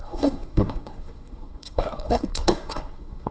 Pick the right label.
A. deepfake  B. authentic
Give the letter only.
A